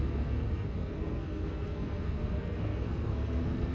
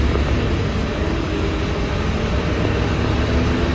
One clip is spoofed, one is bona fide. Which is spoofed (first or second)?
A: first